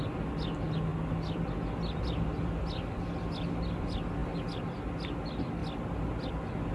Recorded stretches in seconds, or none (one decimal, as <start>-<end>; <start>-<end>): 0.0-6.7